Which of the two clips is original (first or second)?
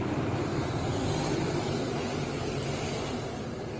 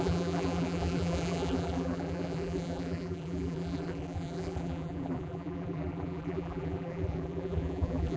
first